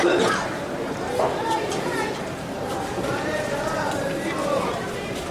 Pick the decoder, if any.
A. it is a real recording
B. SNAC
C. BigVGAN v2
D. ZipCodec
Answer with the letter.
C